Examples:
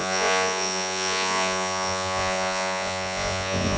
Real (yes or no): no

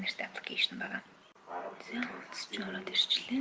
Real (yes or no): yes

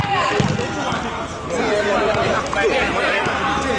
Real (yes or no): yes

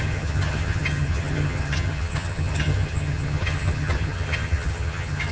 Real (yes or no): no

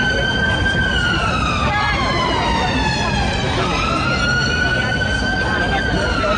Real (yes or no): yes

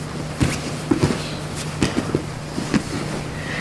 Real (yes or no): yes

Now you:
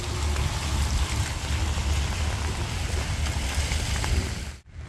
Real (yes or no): yes